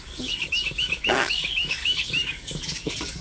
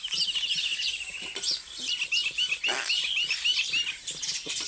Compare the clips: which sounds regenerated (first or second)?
first